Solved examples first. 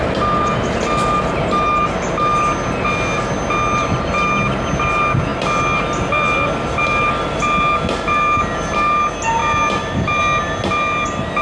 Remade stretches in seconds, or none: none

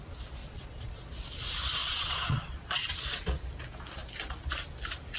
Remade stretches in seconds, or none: 0.4-1.1 (vocoder, Vocos); 1.8-2.7

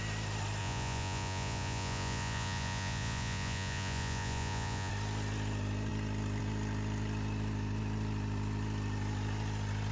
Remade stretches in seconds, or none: 0.6-4.9 (vocoder, Vocos)

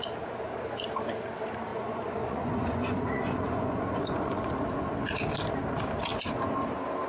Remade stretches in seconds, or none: 1.7-4.5 (vocoder, Vocos)

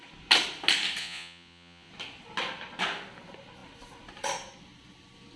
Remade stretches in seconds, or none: 1.0-1.9 (vocoder, Vocos)

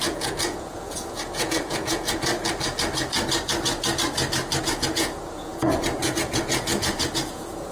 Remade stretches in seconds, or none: 0.0-2.3 (vocoder, Vocos); 4.6-7.7

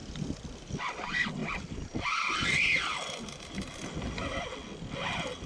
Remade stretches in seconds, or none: none